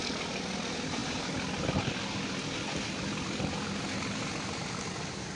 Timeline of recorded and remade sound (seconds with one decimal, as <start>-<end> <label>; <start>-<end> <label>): 0.0-5.4 recorded